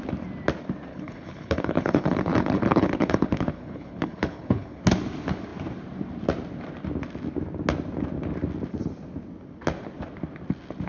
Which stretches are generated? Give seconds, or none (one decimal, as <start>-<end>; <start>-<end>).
0.9-4.8